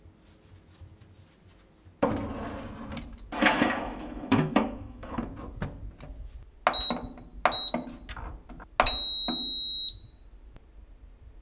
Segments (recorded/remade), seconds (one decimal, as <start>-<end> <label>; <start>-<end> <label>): 0.0-3.4 recorded; 3.4-5.2 remade; 5.2-11.4 recorded